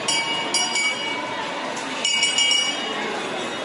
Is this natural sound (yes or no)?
yes